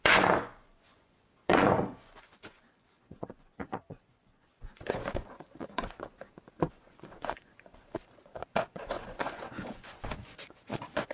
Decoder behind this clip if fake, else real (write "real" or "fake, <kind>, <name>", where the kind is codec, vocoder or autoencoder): fake, vocoder, Vocos